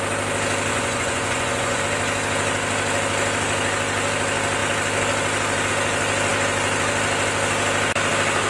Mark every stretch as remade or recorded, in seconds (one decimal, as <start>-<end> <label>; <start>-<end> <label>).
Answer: 0.0-0.7 recorded; 0.7-1.8 remade; 1.8-8.5 recorded